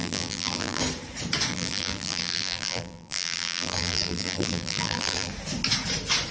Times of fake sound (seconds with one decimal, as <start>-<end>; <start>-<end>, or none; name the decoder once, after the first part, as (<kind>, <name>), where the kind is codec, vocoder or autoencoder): 0.0-0.8 (vocoder, BigVGAN v2); 1.5-5.3

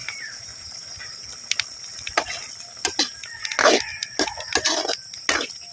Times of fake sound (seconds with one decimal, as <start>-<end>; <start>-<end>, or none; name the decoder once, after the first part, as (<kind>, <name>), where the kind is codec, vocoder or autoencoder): 0.0-1.0 (vocoder, BigVGAN v2)

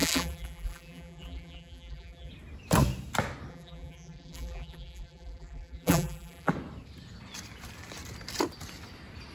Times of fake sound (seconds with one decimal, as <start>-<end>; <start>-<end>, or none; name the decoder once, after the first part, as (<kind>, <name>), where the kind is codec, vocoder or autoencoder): 0.0-2.3 (vocoder, BigVGAN v2); 3.5-6.5

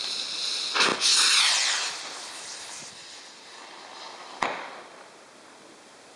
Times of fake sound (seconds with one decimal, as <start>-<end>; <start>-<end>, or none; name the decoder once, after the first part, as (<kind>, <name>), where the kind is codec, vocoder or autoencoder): none

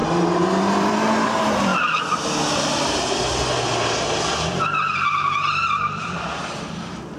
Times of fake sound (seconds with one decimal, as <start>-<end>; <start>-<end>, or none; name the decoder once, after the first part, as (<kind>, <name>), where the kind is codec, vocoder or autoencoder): 0.0-1.7 (vocoder, BigVGAN v2); 6.0-7.2